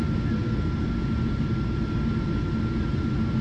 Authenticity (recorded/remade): recorded